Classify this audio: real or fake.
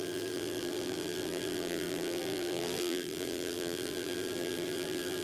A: fake